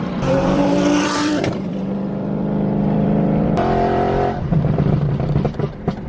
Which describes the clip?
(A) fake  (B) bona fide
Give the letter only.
A